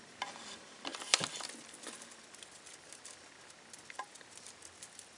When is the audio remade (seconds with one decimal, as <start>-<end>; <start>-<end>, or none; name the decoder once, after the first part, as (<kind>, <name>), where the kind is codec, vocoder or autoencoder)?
none